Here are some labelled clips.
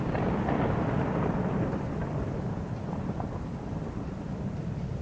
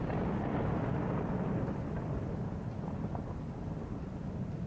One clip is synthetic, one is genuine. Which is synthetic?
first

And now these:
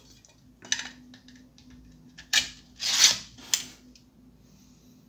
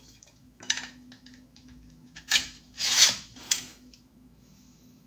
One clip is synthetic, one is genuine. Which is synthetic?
second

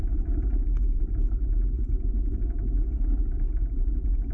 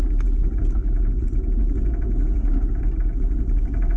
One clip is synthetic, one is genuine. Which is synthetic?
first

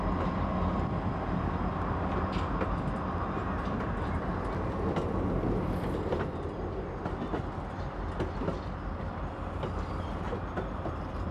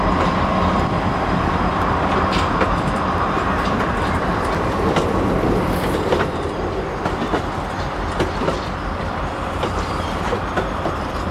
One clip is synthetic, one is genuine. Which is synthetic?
second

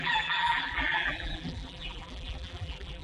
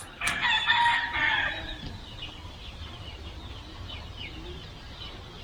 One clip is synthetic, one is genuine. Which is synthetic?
first